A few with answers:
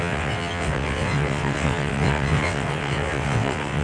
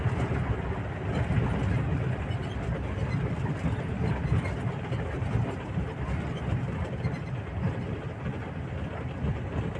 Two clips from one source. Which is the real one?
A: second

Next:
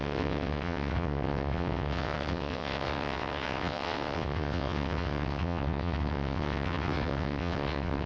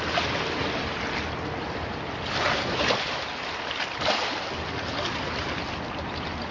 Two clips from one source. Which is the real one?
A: second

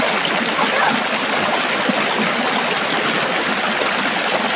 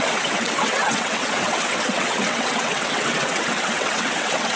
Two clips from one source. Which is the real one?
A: first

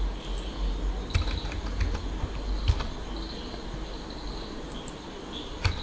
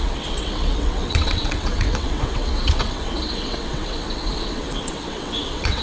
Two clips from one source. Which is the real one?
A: first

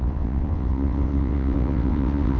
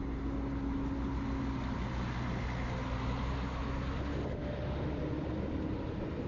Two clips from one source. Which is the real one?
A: second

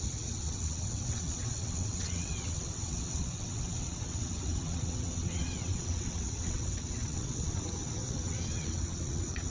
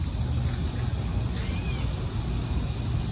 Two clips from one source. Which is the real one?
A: second